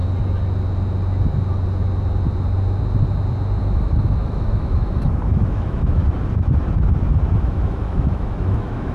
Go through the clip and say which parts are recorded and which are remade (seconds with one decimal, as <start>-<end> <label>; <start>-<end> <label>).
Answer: 0.0-3.6 recorded; 3.6-6.0 remade; 6.0-7.4 recorded; 7.4-8.9 remade